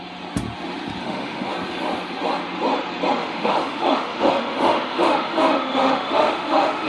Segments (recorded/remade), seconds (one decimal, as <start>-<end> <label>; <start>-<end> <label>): 0.0-1.0 recorded; 1.0-1.5 remade; 1.5-3.2 recorded; 3.2-6.9 remade